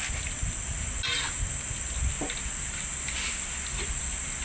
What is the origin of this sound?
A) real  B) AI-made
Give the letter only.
A